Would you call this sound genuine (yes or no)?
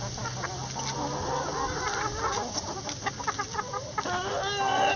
yes